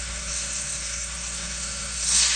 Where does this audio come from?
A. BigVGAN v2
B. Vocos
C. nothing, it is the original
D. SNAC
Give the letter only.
D